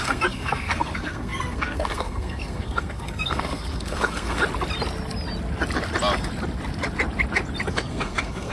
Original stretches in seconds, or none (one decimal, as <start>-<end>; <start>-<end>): 4.4-7.7